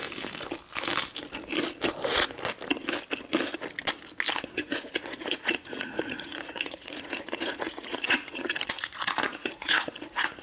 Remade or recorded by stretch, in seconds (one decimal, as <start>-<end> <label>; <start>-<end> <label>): 0.0-4.4 recorded; 4.4-10.4 remade